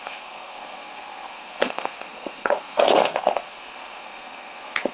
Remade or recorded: remade